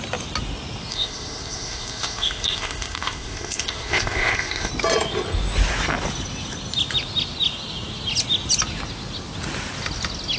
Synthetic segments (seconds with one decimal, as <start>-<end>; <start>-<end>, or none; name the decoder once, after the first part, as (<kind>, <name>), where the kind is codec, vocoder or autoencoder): 0.9-4.7 (codec, ZipCodec)